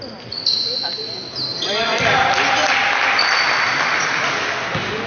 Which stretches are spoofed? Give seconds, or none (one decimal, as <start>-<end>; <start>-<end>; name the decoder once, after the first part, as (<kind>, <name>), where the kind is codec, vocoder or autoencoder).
1.5-4.2 (vocoder, BigVGAN v2)